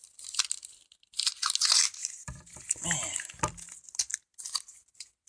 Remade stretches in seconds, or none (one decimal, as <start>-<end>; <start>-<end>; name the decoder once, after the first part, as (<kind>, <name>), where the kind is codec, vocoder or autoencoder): none